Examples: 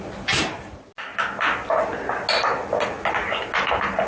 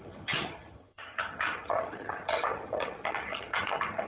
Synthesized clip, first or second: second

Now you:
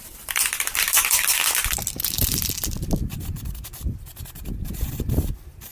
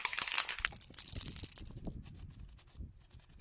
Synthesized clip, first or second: first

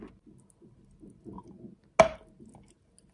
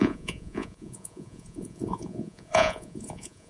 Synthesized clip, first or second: second